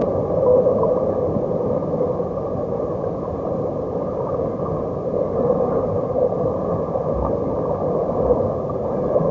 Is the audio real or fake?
real